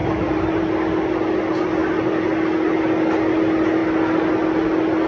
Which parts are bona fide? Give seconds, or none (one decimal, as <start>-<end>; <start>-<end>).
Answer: 0.6-5.1

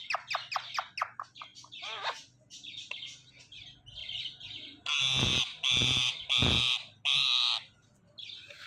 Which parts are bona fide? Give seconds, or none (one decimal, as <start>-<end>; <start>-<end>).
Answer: 0.0-8.7